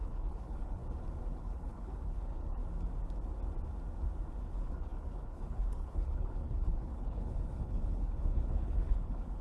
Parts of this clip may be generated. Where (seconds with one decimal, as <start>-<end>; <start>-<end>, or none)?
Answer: 0.0-0.8; 1.3-2.6; 4.4-9.4